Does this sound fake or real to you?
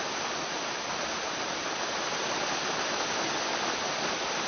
real